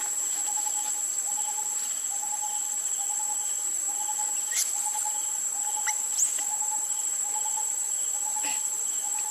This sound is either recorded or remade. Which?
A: recorded